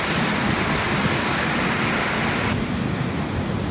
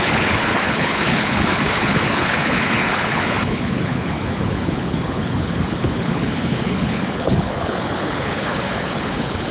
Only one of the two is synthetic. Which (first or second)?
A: second